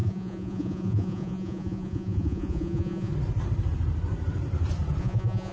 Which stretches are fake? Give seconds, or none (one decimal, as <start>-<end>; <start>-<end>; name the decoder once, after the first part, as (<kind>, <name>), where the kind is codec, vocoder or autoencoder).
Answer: 0.0-3.1 (vocoder, Vocos); 5.0-5.5